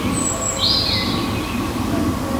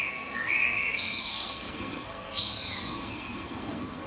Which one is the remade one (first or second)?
second